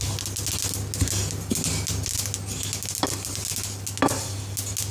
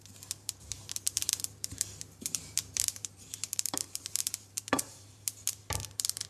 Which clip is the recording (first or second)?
first